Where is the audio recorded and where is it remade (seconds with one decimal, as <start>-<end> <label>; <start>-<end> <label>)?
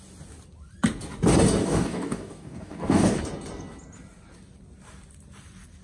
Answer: 0.0-1.6 recorded; 1.6-3.2 remade; 3.2-5.8 recorded